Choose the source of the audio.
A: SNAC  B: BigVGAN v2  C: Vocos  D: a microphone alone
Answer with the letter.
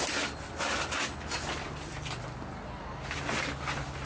D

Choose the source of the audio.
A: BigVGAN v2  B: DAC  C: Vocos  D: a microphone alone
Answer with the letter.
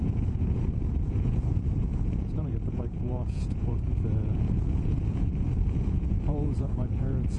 C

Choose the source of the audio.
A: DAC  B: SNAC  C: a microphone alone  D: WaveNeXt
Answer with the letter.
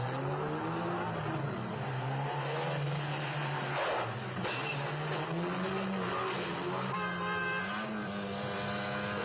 C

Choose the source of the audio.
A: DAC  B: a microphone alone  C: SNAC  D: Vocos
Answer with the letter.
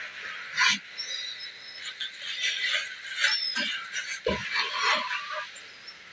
B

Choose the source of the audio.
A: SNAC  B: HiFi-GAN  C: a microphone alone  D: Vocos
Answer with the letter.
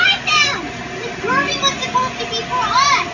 C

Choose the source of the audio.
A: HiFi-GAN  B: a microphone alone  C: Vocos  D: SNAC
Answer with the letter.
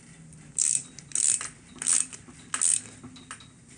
B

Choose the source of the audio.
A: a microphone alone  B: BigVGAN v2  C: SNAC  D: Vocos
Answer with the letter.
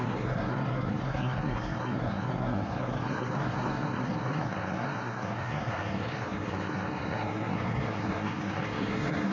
C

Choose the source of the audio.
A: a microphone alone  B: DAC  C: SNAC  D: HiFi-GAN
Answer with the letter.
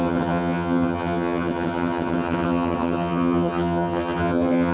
D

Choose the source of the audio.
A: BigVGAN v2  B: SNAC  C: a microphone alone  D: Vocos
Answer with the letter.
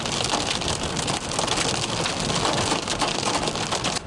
C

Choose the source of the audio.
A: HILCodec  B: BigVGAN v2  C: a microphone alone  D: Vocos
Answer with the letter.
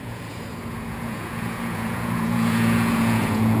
D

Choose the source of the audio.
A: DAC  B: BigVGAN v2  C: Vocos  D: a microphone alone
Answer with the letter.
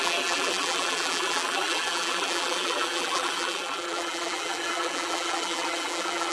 B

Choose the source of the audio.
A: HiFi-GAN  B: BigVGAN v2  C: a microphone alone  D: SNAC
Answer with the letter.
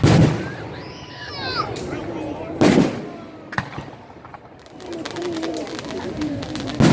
C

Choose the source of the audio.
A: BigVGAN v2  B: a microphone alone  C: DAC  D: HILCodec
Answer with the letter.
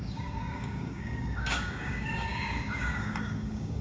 C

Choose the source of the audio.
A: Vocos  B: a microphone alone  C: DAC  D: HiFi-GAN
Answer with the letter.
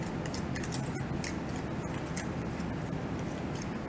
B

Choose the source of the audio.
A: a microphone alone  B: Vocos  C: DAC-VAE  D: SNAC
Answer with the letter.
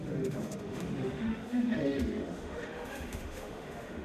C